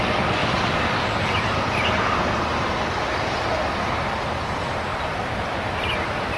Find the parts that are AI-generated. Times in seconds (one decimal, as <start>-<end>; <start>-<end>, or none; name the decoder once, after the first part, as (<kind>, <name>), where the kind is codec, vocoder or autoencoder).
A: 0.4-3.2 (vocoder, BigVGAN v2); 4.9-6.4